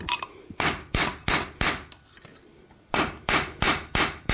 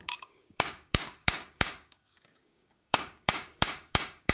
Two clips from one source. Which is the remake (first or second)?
second